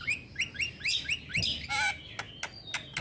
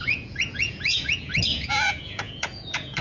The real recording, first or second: first